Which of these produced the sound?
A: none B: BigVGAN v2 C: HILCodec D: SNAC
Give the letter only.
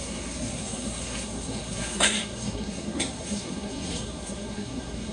D